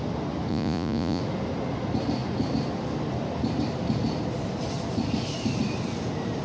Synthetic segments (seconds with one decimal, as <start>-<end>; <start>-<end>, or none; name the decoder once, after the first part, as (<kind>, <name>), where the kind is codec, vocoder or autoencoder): 0.5-1.2 (vocoder, Vocos)